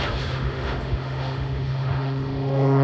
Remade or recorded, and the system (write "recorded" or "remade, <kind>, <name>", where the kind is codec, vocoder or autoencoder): remade, autoencoder, DAC-VAE